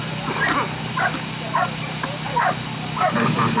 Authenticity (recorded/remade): recorded